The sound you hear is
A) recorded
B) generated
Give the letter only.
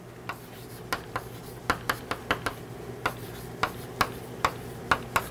A